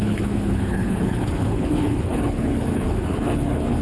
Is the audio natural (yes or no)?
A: no